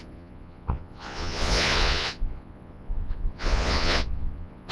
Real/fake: fake